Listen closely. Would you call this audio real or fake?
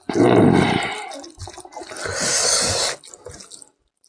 real